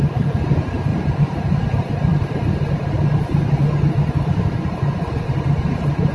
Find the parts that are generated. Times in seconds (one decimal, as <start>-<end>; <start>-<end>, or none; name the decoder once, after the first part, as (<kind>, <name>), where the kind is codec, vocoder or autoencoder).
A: none